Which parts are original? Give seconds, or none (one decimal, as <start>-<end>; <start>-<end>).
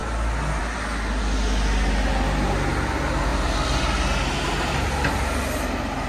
0.0-3.3; 3.8-6.1